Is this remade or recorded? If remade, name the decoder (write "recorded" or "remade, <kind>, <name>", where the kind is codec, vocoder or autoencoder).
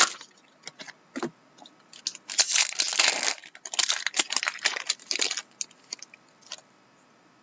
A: recorded